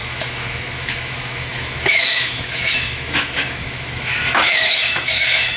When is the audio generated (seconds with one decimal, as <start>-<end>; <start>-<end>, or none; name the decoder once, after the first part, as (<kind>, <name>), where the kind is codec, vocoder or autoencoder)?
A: 0.0-5.6 (autoencoder, DAC-VAE)